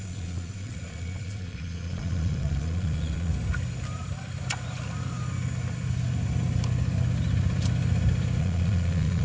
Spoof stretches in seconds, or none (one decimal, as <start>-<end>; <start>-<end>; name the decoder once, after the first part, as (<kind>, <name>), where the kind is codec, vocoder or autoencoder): 0.0-3.3 (vocoder, Vocos); 8.4-9.2